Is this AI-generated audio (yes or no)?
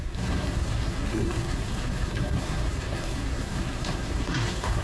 yes